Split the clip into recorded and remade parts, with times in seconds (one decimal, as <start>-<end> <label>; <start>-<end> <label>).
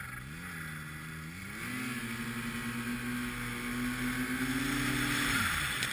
0.0-5.9 recorded